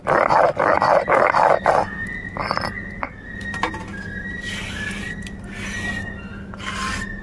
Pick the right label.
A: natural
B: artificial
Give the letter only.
A